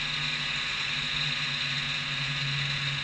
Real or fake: real